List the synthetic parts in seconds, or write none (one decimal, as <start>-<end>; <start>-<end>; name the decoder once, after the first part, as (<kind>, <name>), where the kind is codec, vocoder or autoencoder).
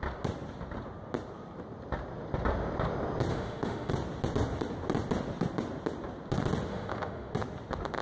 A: 3.3-3.9 (autoencoder, DAC-VAE); 6.7-7.3